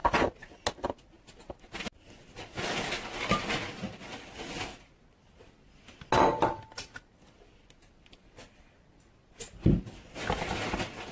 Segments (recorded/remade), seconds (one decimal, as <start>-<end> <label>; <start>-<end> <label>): 0.0-11.1 recorded